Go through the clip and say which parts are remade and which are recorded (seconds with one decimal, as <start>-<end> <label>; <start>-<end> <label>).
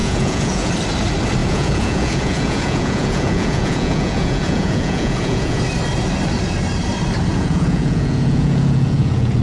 0.0-0.7 remade; 0.7-1.4 recorded; 1.4-5.6 remade; 5.6-7.3 recorded; 7.3-9.4 remade